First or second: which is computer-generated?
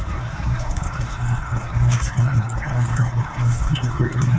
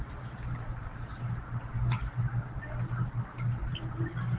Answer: first